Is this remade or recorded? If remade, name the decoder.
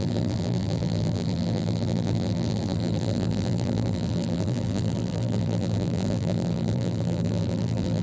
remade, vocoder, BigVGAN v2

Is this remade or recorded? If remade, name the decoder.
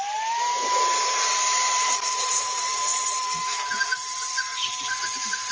remade, vocoder, BigVGAN v2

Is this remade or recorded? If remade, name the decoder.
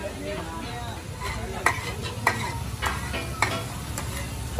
recorded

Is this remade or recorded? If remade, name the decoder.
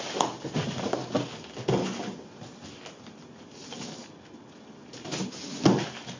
recorded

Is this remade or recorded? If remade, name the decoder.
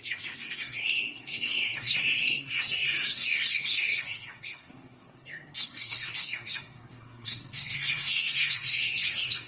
remade, codec, SNAC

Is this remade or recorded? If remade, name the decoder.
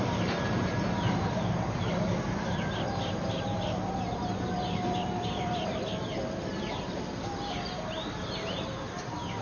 remade, vocoder, BigVGAN v2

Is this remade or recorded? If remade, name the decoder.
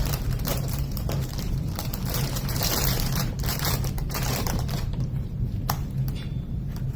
remade, vocoder, BigVGAN v2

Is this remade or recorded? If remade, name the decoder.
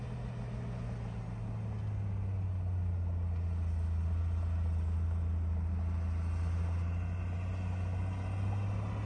recorded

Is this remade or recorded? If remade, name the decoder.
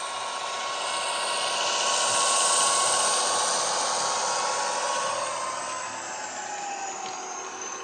recorded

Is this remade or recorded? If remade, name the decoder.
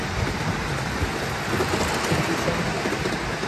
recorded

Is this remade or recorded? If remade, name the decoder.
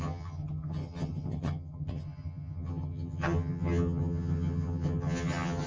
remade, vocoder, HiFi-GAN